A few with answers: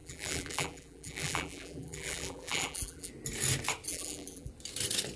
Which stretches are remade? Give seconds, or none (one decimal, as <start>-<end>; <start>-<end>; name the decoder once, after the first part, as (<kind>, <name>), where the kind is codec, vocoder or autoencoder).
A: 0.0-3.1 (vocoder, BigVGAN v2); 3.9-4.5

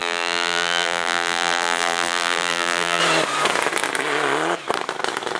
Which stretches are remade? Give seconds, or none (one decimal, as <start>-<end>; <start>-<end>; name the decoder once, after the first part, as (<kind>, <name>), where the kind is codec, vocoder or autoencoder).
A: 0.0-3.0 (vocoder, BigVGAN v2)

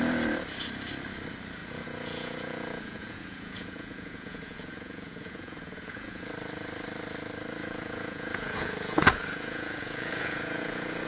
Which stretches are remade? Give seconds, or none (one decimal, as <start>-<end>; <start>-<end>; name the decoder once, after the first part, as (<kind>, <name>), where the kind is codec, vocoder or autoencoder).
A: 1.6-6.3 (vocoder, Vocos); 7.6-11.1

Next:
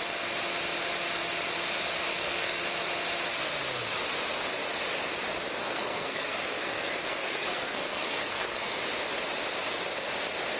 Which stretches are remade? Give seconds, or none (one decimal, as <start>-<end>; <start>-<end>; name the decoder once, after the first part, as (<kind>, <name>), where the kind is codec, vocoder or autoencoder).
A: 2.1-2.6 (codec, SNAC); 5.6-8.8

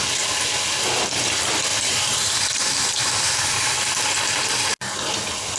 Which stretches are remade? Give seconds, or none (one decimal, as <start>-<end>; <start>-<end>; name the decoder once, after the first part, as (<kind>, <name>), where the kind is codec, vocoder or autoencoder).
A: 1.7-3.7 (vocoder, BigVGAN v2)